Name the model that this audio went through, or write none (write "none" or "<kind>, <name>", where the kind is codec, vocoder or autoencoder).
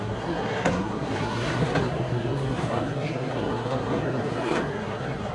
codec, SNAC